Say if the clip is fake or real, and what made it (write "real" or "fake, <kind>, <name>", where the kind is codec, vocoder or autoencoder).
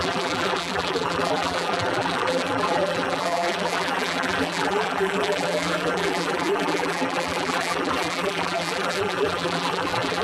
fake, vocoder, BigVGAN v2